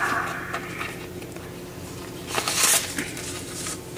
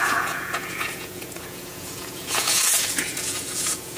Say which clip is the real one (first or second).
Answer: first